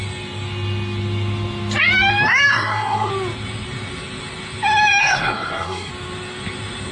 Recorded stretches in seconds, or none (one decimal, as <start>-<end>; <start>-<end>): 0.0-2.5; 3.1-5.0; 5.9-6.9